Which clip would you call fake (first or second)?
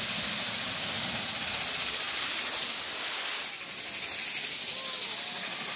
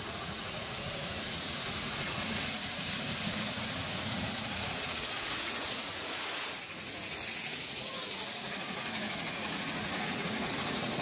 second